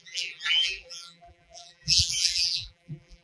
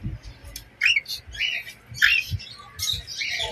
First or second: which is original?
second